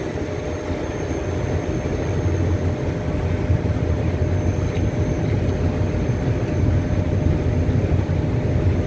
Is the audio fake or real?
real